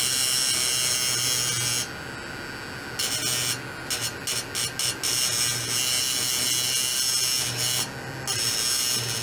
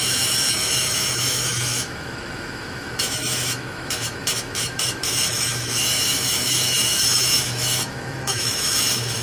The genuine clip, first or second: first